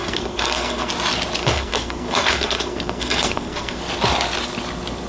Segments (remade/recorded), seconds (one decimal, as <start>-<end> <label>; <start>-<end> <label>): 0.0-0.9 remade; 0.9-1.4 recorded; 1.4-3.8 remade; 3.8-5.1 recorded